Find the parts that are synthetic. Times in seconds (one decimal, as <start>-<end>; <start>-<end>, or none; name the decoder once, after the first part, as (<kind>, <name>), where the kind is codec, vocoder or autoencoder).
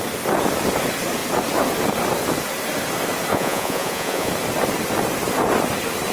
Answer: 3.3-4.3 (vocoder, Vocos)